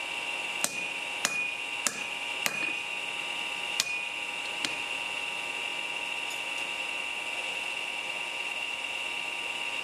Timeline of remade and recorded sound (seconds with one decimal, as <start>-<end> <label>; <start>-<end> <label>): 0.0-9.8 recorded